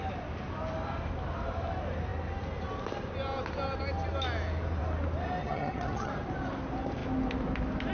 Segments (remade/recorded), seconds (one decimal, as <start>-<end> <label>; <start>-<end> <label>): 0.0-5.4 recorded; 5.4-6.1 remade; 6.1-7.9 recorded